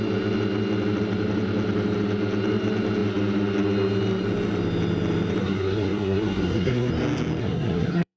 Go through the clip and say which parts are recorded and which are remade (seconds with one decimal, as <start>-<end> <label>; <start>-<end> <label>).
0.0-5.4 recorded; 5.4-6.9 remade; 6.9-7.4 recorded; 7.4-8.2 remade